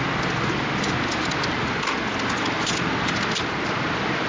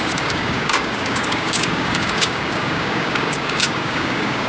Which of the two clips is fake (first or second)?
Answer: second